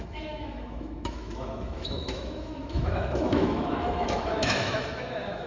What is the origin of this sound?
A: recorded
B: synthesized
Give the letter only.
B